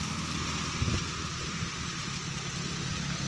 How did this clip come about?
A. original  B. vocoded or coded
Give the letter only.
B